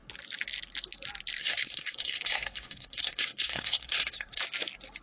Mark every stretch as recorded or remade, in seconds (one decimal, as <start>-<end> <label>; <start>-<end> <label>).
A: 0.0-1.4 recorded; 1.4-4.4 remade; 4.4-5.0 recorded